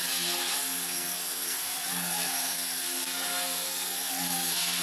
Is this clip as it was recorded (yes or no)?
no